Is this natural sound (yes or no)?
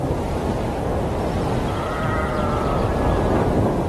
yes